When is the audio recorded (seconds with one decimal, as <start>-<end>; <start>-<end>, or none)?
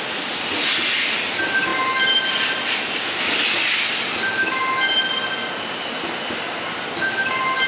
0.0-7.7